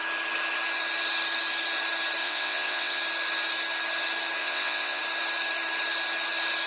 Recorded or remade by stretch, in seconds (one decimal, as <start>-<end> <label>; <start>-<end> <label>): 0.0-2.2 recorded; 2.2-3.0 remade; 3.0-4.4 recorded; 4.4-5.0 remade; 5.0-6.7 recorded